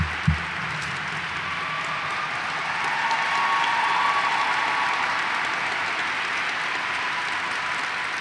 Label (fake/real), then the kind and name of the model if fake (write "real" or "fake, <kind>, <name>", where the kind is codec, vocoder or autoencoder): real